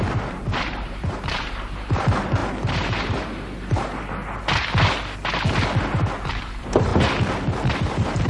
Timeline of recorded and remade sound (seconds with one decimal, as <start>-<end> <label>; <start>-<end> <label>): 0.0-4.2 remade; 4.2-5.9 recorded; 5.9-6.9 remade; 6.9-7.8 recorded; 7.8-8.3 remade